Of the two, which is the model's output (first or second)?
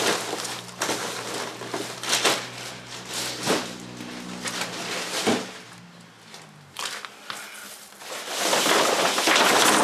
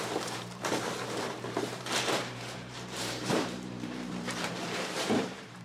second